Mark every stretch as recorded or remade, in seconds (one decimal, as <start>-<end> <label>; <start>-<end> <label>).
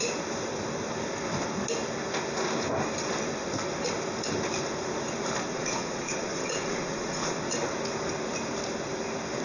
0.0-5.5 recorded; 5.5-7.4 remade; 7.4-9.4 recorded